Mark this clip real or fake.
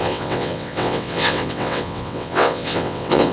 fake